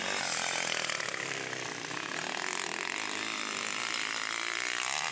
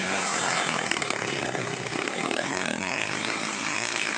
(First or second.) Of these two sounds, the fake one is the second